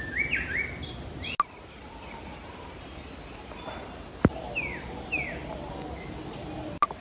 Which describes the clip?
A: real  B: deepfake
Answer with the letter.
A